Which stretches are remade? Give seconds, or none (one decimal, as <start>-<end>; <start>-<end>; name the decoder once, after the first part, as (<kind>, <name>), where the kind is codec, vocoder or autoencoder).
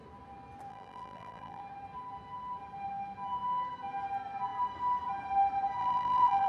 0.7-1.6 (vocoder, BigVGAN v2); 5.8-6.5